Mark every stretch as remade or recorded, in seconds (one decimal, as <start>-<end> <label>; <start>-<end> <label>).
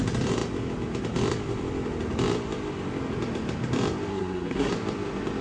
0.0-4.1 recorded; 4.1-4.7 remade; 4.7-5.4 recorded